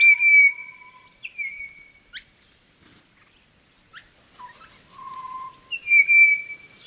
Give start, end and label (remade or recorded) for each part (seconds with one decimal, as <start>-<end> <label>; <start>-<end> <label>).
0.0-0.6 recorded; 0.6-1.5 remade; 1.5-6.9 recorded